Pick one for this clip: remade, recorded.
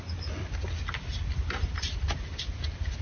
recorded